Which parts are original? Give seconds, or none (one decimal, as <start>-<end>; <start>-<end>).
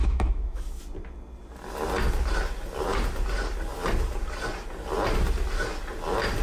0.7-6.4